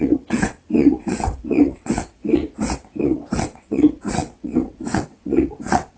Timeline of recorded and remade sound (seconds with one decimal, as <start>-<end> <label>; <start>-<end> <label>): 0.0-2.4 remade; 2.4-3.0 recorded; 3.0-6.0 remade

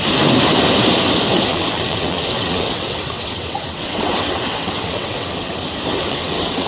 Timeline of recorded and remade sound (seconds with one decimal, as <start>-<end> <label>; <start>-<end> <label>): 0.0-1.5 recorded; 1.5-5.5 remade; 5.5-5.9 recorded; 5.9-6.7 remade

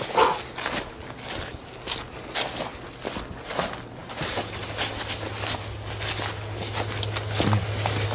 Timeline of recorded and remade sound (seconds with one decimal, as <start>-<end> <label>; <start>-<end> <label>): 0.0-8.1 recorded

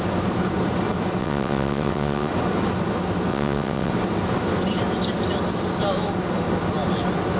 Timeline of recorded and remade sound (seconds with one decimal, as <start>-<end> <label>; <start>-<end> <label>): 0.0-1.2 recorded; 1.2-2.3 remade; 2.3-3.3 recorded; 3.3-3.9 remade; 3.9-7.4 recorded

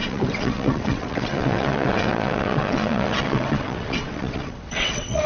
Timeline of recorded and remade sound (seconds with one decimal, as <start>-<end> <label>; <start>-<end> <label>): 0.0-5.3 remade

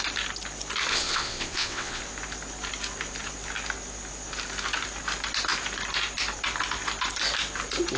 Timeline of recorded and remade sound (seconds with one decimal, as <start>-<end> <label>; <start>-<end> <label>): 0.0-0.9 recorded; 0.9-2.0 remade; 2.0-8.0 recorded